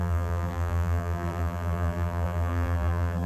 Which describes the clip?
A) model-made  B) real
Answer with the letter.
A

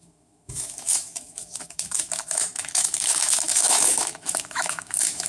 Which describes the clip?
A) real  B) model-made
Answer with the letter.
B